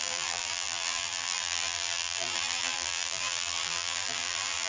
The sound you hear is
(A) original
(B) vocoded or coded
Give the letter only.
B